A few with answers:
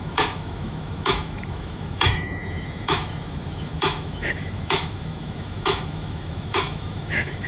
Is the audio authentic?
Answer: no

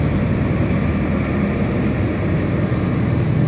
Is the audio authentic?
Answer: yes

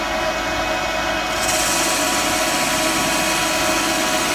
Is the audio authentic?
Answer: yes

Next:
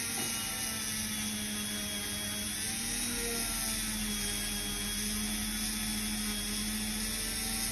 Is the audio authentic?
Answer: yes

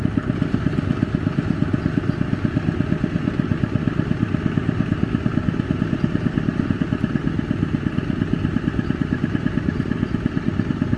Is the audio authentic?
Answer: yes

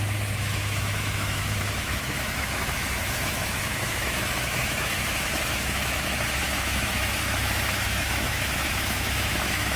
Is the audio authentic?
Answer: no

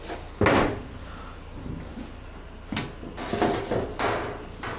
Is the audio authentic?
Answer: yes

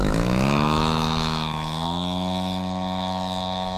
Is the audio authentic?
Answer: no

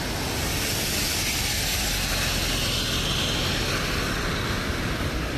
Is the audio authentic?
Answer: yes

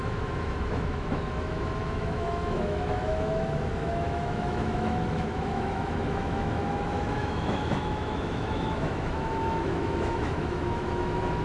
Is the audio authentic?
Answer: no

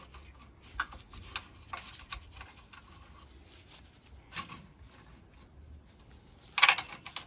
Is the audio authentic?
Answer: yes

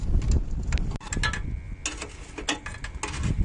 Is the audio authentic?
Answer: yes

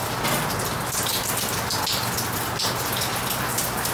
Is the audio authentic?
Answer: yes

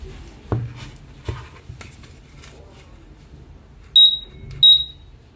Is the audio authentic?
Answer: yes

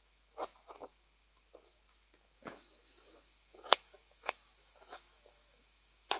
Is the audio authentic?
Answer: no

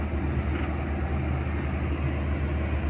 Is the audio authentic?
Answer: yes